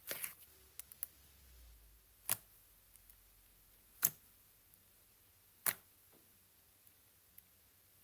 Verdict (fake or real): real